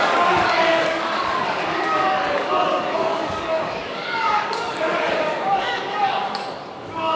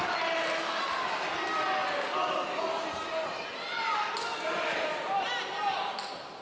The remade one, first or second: first